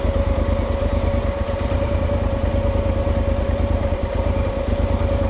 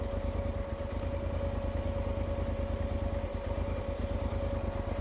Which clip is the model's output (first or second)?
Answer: first